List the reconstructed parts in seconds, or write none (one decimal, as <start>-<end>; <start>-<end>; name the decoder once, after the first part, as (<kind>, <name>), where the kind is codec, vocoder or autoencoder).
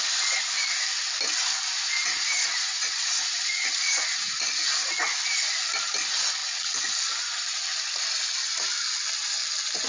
2.0-4.9 (vocoder, Vocos)